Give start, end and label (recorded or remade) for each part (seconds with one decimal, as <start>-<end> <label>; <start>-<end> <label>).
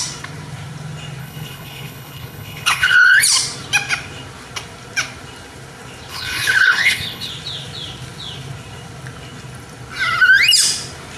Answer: 0.0-1.2 recorded; 1.2-3.2 remade; 3.2-6.1 recorded; 6.1-7.3 remade; 7.3-11.2 recorded